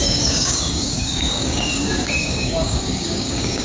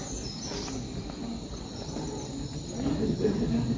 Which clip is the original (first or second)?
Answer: second